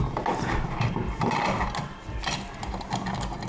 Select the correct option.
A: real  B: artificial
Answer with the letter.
A